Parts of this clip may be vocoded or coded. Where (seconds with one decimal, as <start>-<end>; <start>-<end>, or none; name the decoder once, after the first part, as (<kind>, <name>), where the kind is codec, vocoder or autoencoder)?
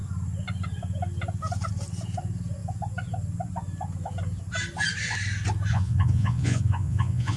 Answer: 5.7-7.4 (vocoder, Vocos)